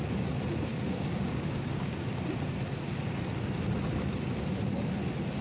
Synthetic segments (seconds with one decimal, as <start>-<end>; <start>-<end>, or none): 0.7-2.2